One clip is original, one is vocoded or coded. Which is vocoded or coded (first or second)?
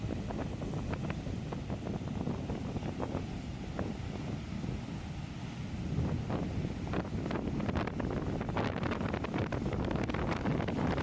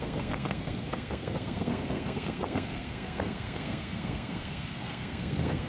second